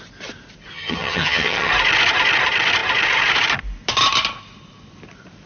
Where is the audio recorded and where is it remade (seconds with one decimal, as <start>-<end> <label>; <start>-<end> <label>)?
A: 0.0-0.7 recorded; 0.7-1.7 remade; 1.7-5.5 recorded